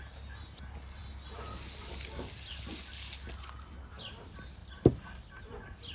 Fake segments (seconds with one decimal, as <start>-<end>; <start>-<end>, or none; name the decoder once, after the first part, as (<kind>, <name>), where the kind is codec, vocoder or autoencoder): none

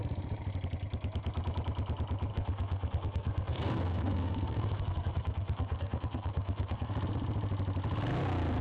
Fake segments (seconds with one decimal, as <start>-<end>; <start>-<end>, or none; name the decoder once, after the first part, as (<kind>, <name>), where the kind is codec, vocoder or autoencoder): 2.3-6.9 (codec, SNAC)

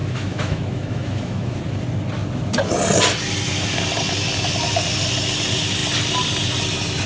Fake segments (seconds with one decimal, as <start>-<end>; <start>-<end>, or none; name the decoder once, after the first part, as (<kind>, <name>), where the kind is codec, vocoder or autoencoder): 0.0-1.6 (autoencoder, DAC-VAE)

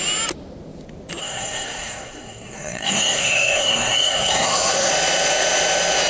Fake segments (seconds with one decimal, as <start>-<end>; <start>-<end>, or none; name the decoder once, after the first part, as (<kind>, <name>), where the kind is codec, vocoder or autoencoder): 1.2-4.9 (codec, SNAC)

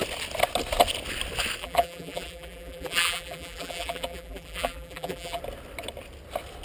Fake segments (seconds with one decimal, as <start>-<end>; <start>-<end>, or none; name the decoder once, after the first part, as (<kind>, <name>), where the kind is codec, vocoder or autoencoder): 1.6-5.4 (vocoder, BigVGAN v2)

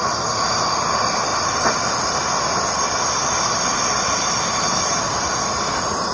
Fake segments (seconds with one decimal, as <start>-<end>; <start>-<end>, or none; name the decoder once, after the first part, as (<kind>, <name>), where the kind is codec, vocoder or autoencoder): none

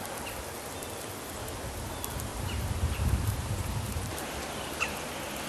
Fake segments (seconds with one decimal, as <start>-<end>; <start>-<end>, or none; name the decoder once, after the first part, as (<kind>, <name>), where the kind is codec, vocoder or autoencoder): 2.3-5.1 (vocoder, BigVGAN v2)